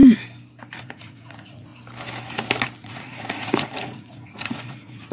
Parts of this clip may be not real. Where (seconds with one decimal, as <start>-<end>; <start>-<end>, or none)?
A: 0.8-1.7; 2.8-5.1